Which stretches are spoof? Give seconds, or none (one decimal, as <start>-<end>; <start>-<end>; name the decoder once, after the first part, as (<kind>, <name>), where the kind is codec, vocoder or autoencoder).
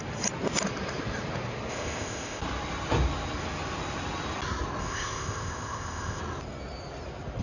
1.7-2.4 (codec, ZipCodec); 4.8-6.2